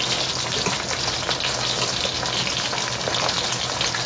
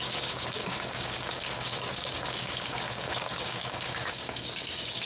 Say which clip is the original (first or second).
first